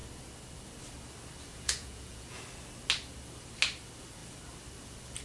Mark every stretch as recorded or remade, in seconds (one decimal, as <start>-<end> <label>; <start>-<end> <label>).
0.0-1.5 recorded; 1.5-2.4 remade; 2.4-5.2 recorded